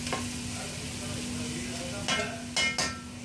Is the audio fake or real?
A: real